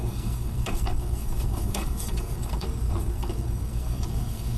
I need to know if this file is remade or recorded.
remade